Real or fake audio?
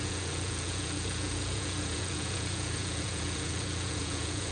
fake